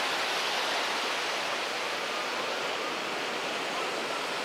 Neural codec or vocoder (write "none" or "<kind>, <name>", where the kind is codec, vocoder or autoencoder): none